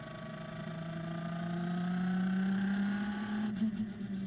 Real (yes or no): yes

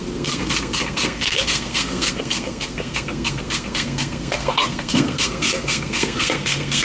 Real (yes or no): no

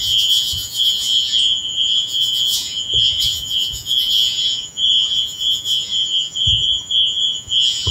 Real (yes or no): no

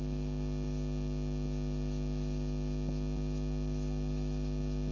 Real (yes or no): yes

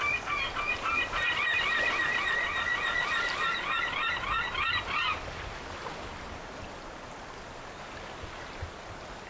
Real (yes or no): yes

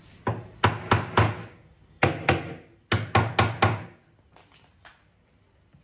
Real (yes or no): yes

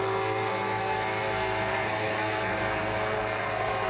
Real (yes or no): no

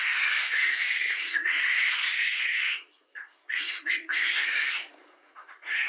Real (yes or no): no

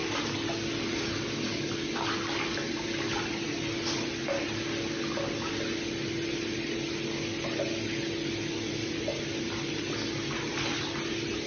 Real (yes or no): yes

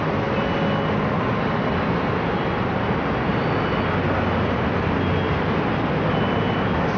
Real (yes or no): yes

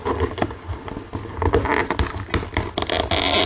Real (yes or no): yes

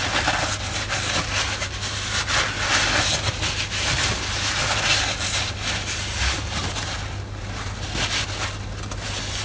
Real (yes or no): yes